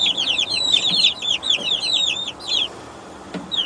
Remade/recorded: remade